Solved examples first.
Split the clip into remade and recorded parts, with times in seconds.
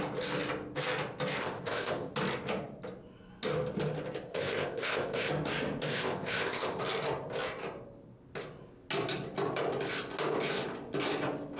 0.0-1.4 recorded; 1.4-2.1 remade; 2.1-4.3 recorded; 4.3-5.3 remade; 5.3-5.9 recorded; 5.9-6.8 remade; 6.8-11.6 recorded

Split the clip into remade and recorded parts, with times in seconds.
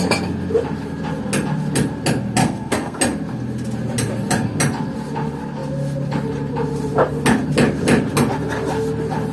0.0-2.4 recorded; 2.4-3.0 remade; 3.0-9.3 recorded